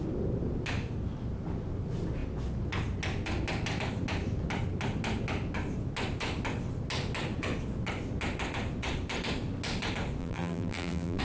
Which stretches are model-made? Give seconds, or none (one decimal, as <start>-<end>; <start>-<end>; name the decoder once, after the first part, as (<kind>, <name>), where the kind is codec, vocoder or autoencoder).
10.2-11.2 (vocoder, BigVGAN v2)